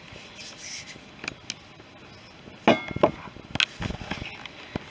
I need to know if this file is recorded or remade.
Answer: recorded